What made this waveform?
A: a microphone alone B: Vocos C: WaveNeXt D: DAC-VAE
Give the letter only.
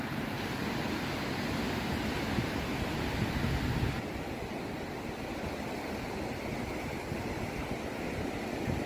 A